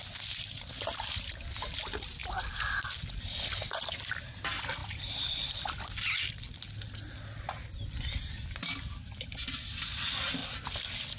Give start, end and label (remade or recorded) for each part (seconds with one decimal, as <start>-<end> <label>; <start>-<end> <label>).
0.0-11.2 recorded